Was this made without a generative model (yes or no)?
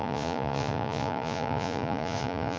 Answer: no